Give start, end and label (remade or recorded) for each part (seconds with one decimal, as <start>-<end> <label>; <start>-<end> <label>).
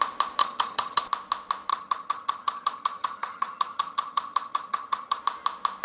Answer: 0.0-0.4 recorded; 0.4-1.0 remade; 1.0-1.7 recorded; 1.7-5.2 remade; 5.2-5.8 recorded